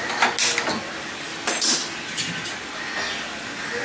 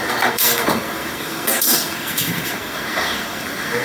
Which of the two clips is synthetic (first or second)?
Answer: second